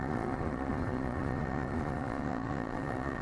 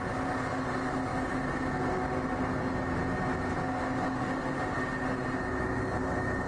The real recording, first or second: second